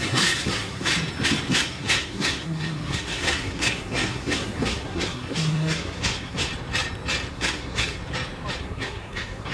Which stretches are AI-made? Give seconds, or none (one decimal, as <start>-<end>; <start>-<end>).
0.0-0.9; 1.5-6.5; 7.3-8.0; 8.6-9.5